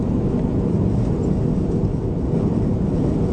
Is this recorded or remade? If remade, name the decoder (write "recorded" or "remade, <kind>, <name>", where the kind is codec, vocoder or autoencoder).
recorded